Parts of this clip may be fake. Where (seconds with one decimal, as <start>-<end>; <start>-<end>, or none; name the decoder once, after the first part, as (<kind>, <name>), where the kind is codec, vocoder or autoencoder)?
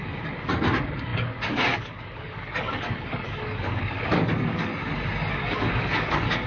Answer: 0.0-4.7 (codec, DAC); 5.3-6.5